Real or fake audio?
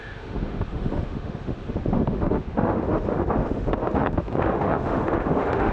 fake